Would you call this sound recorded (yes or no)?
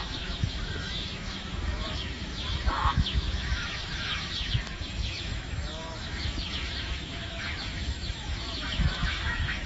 no